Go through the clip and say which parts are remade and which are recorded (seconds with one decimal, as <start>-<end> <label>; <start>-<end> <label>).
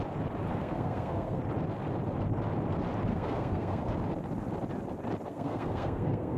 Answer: 0.0-0.5 recorded; 0.5-1.4 remade; 1.4-3.1 recorded; 3.1-3.8 remade; 3.8-5.3 recorded; 5.3-6.4 remade